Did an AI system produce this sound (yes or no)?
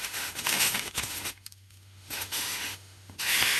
yes